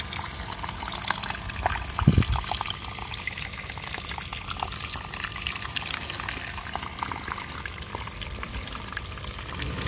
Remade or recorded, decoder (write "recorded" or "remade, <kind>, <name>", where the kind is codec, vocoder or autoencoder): recorded